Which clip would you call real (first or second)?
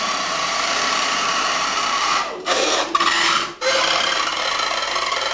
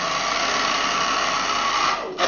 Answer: second